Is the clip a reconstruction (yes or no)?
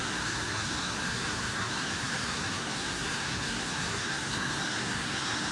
yes